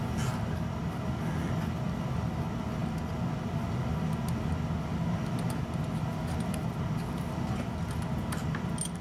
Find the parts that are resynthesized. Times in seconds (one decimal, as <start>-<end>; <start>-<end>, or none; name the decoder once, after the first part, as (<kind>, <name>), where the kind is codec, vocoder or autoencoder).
none